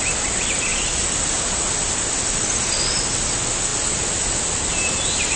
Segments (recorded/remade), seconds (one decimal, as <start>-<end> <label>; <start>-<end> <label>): 0.0-5.4 recorded